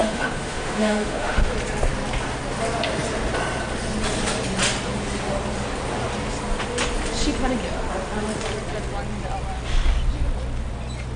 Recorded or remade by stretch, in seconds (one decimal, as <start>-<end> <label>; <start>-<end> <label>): 0.0-1.5 remade; 1.5-11.2 recorded